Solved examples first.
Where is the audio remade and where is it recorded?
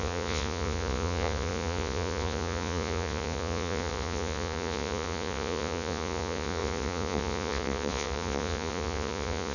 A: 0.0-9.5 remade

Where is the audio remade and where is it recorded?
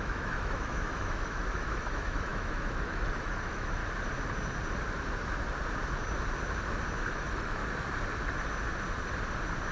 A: 0.0-3.8 remade; 3.8-7.1 recorded; 7.1-7.6 remade; 7.6-9.7 recorded